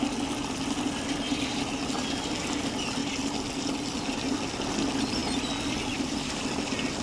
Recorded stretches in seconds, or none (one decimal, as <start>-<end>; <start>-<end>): 0.0-7.0